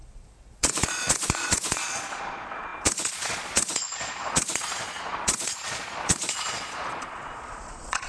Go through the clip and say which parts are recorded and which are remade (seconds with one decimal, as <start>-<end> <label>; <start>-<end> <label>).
0.0-8.1 remade